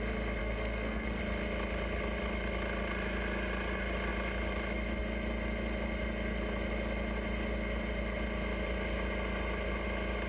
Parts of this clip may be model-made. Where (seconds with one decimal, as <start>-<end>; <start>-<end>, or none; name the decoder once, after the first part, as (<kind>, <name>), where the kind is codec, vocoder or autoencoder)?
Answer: 0.4-1.2 (codec, SNAC)